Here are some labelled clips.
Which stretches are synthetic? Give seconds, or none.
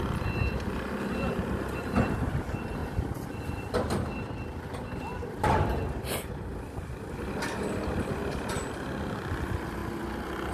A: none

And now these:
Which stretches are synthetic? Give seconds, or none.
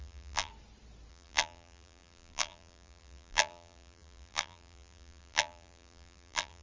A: 0.0-0.5 (vocoder, BigVGAN v2); 1.1-6.6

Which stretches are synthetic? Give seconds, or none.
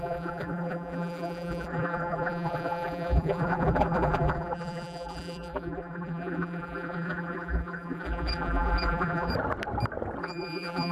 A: 0.0-9.3 (vocoder, BigVGAN v2); 10.2-10.9